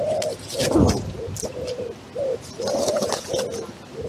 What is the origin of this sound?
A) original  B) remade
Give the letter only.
A